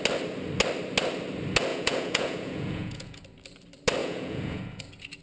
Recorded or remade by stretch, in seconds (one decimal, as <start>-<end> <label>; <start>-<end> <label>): 0.0-1.7 recorded; 1.7-3.2 remade; 3.2-4.0 recorded; 4.0-4.8 remade; 4.8-5.2 recorded